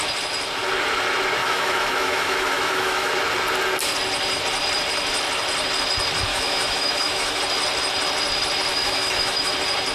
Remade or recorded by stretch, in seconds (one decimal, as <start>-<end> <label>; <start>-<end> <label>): 0.0-1.4 recorded; 1.4-3.1 remade; 3.1-6.3 recorded; 6.3-7.4 remade; 7.4-8.7 recorded; 8.7-9.5 remade; 9.5-9.9 recorded